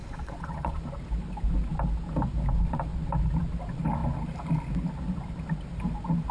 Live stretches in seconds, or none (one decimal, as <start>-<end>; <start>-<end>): 0.8-6.3